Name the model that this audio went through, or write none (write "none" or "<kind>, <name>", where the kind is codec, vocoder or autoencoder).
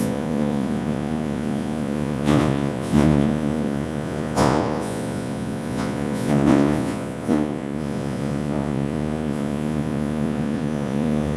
vocoder, Vocos